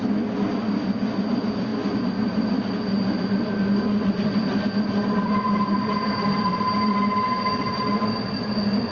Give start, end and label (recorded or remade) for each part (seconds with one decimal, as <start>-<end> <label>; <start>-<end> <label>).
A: 0.0-8.9 recorded